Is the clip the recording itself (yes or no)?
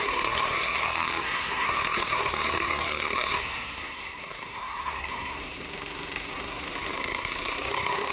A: no